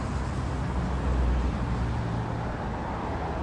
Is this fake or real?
real